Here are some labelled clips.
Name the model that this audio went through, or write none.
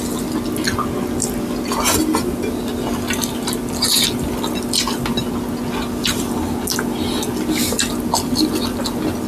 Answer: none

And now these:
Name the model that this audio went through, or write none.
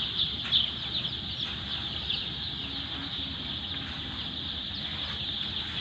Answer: none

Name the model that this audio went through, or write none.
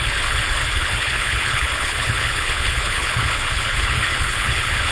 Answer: codec, HILCodec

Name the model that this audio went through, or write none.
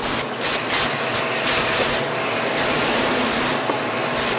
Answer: none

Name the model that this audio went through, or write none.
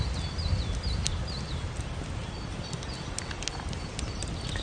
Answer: none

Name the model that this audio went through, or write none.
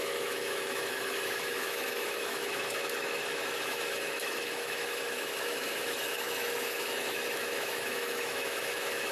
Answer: autoencoder, DAC-VAE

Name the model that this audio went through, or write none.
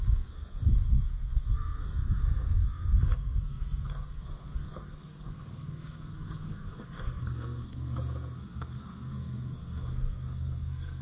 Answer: codec, SNAC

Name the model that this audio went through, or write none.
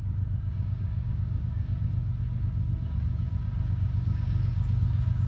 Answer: codec, DAC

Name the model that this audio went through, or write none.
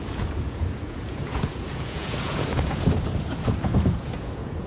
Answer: vocoder, Vocos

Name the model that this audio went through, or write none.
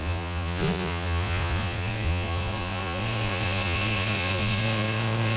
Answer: vocoder, Vocos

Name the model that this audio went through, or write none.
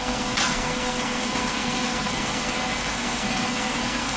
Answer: codec, SNAC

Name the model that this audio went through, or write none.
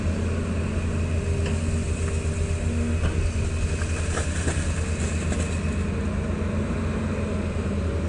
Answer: none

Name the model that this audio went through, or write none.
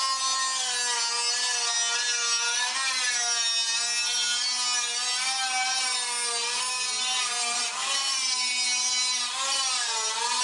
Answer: none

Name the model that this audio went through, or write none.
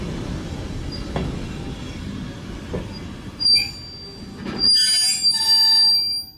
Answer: none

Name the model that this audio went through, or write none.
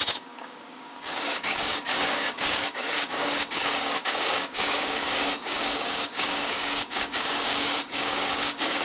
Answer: codec, DAC